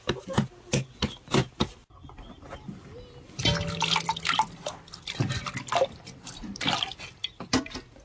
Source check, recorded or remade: recorded